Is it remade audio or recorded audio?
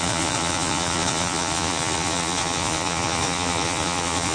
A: remade